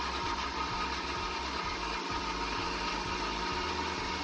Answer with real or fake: real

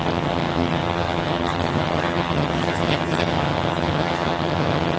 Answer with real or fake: fake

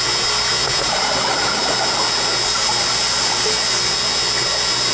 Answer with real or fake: real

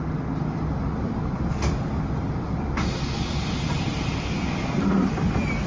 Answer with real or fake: real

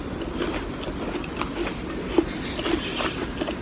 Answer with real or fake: real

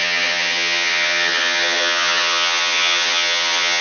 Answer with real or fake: fake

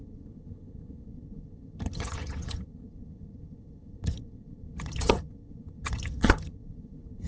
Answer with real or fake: fake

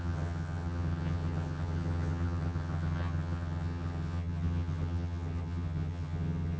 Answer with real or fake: fake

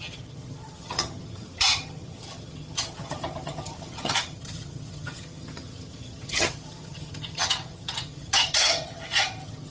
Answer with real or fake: fake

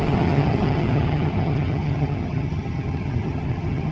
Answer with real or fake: fake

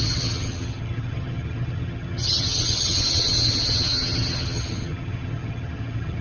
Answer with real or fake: fake